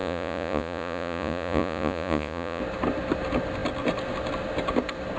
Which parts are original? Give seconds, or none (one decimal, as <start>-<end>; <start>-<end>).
2.6-5.2